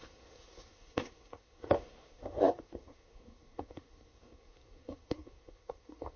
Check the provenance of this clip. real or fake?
fake